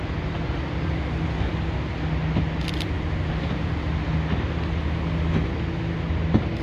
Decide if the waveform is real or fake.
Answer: real